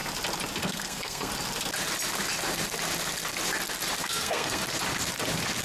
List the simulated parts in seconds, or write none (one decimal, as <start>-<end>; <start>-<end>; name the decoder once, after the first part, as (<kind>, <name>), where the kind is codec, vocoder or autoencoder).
0.6-1.3 (codec, SNAC); 4.0-4.6